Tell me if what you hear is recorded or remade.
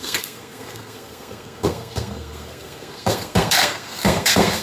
remade